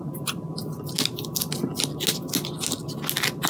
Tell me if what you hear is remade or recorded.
recorded